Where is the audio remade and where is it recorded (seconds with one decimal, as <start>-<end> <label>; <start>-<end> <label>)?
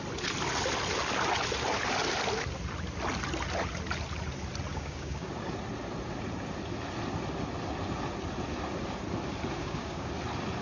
0.0-4.7 recorded; 4.7-5.3 remade; 5.3-9.6 recorded; 9.6-10.1 remade; 10.1-10.6 recorded